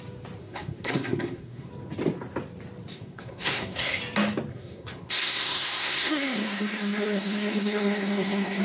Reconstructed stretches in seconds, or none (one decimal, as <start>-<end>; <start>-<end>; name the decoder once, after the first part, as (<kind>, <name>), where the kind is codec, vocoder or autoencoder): 0.4-1.7 (codec, SNAC); 2.9-4.0; 4.5-8.6